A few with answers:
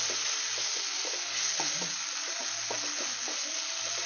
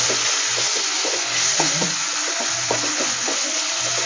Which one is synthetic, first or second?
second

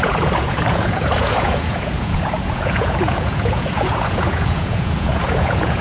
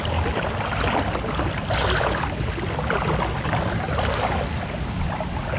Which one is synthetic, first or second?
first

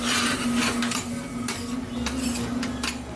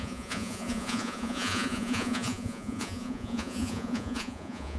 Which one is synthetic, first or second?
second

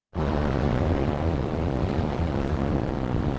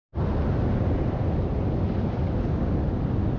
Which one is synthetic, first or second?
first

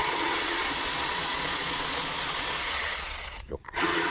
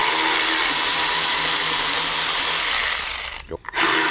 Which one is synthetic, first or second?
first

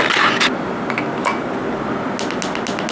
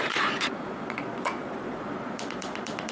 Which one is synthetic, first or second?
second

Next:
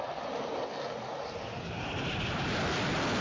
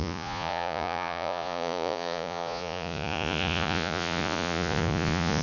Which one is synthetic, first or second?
second